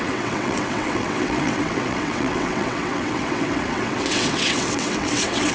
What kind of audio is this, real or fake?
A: fake